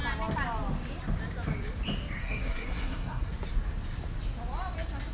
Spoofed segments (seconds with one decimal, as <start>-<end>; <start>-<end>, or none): 2.2-3.3